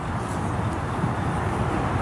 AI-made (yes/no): no